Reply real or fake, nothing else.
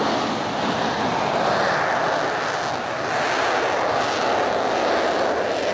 real